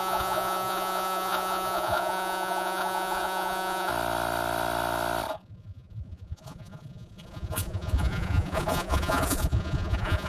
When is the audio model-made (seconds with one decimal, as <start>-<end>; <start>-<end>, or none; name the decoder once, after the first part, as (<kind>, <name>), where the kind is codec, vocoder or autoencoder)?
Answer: 0.0-3.9 (vocoder, Vocos); 5.3-10.3